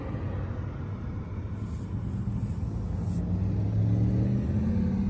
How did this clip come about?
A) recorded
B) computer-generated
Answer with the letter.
A